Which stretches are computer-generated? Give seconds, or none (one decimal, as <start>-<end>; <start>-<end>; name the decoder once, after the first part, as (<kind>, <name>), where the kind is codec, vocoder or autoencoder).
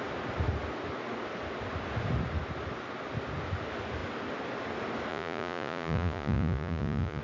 5.1-7.2 (vocoder, Vocos)